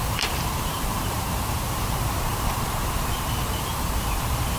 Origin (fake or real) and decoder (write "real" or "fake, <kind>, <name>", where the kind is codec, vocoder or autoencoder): fake, vocoder, BigVGAN v2